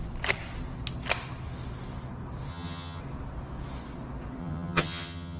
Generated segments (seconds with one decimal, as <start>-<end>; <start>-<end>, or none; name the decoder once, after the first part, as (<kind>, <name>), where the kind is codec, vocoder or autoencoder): 2.5-3.0 (vocoder, HiFi-GAN); 4.4-5.4